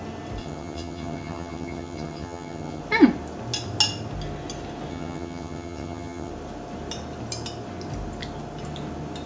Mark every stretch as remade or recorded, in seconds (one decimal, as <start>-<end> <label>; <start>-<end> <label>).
0.0-0.4 recorded; 0.4-2.8 remade; 2.8-4.9 recorded; 4.9-6.3 remade; 6.3-9.3 recorded